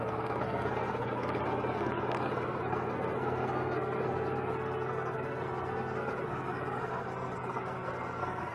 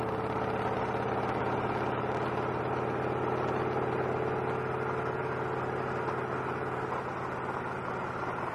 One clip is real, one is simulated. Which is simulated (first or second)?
first